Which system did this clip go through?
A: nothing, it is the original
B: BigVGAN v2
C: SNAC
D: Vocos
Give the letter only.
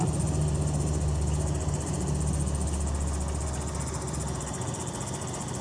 A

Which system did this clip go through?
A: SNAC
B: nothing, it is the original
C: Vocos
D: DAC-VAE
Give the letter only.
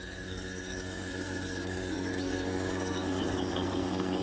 A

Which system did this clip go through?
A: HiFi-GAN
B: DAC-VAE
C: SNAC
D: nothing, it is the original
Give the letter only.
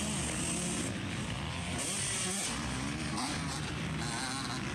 D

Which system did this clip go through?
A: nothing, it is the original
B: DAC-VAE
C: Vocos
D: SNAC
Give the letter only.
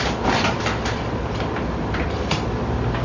A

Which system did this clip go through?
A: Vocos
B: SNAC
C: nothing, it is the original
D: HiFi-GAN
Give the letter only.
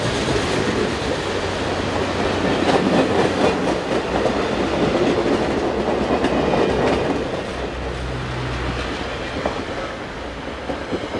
C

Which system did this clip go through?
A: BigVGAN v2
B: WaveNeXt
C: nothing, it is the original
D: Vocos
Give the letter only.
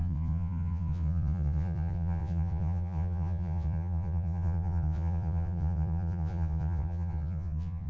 D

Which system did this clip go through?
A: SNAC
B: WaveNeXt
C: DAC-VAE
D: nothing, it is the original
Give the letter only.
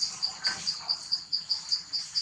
D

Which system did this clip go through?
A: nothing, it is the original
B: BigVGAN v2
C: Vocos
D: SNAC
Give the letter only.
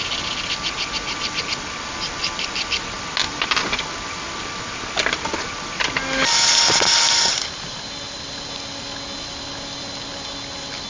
A